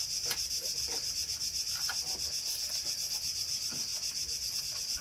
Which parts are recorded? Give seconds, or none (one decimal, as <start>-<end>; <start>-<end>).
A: 0.0-5.0